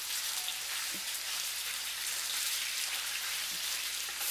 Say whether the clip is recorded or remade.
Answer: remade